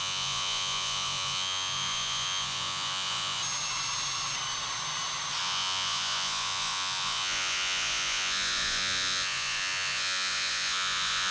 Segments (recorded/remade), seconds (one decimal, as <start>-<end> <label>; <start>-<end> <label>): 0.0-3.4 remade; 3.4-5.4 recorded; 5.4-11.3 remade